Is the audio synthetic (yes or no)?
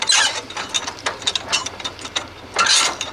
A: no